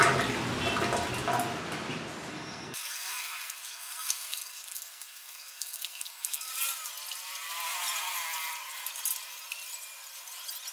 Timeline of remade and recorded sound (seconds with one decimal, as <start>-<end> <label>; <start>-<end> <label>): 0.0-2.3 recorded; 2.3-6.5 remade; 6.5-10.7 recorded